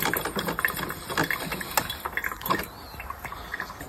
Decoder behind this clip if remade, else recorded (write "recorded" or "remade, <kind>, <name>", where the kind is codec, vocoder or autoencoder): recorded